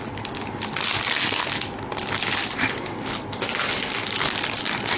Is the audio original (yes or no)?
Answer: yes